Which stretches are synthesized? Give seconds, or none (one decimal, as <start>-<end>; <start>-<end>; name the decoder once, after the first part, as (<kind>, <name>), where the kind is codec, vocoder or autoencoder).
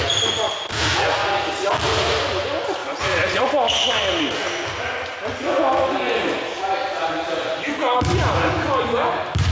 2.8-3.5 (vocoder, Vocos)